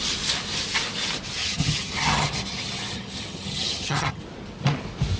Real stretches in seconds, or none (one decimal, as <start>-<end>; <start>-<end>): 0.0-1.4; 4.2-5.2